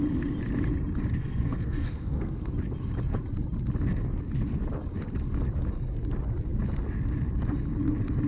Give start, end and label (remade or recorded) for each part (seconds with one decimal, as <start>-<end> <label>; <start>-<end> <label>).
0.0-1.2 recorded; 1.2-2.5 remade; 2.5-8.3 recorded